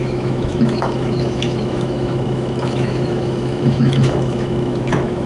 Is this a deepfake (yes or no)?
yes